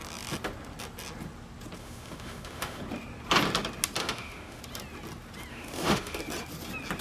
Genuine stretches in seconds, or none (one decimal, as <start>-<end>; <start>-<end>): 0.0-1.8; 2.8-4.0; 4.6-5.5; 6.2-7.0